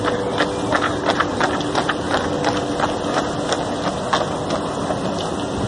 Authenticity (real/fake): real